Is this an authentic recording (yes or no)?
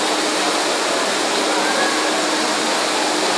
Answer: yes